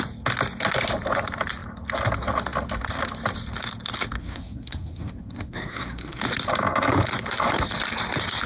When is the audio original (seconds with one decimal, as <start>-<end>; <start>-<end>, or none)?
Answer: 0.0-4.2; 6.2-8.5